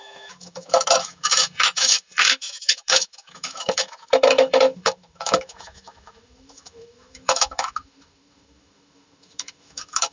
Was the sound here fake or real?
fake